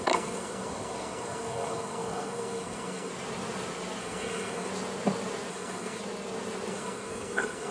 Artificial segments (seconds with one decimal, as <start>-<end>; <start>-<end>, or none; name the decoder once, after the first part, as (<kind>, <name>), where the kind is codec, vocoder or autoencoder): 0.0-3.1 (codec, SNAC); 4.0-4.7; 5.5-6.0; 6.7-7.7